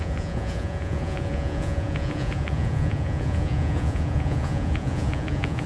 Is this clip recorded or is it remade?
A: remade